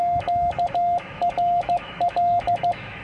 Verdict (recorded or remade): remade